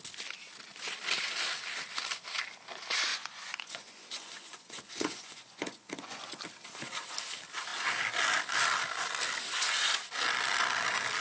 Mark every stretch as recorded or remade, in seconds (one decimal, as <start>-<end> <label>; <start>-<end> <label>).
0.0-3.1 recorded; 3.1-6.4 remade; 6.4-11.2 recorded